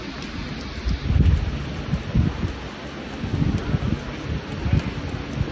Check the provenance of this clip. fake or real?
real